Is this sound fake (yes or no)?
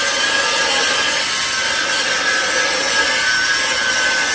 no